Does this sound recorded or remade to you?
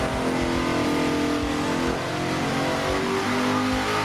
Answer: recorded